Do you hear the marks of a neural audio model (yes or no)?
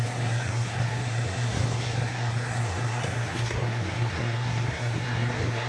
yes